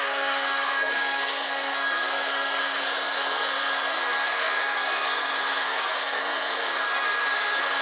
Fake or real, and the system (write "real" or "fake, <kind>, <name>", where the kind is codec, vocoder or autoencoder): fake, codec, SNAC